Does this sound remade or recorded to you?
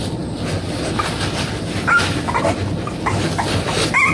recorded